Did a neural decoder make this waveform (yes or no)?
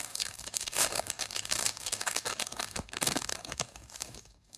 yes